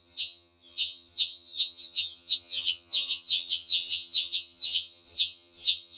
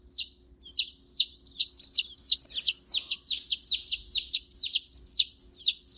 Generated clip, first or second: first